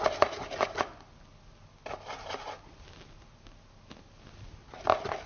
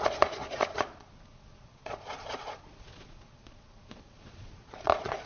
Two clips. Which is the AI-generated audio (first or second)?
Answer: second